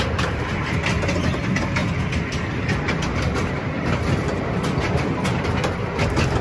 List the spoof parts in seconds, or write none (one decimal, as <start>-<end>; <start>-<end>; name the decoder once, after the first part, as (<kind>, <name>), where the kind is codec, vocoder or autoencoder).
1.8-4.9 (vocoder, BigVGAN v2)